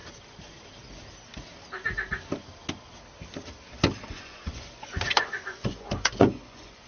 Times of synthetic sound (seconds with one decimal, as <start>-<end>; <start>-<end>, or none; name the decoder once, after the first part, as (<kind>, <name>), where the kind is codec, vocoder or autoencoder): 4.1-6.9 (vocoder, Vocos)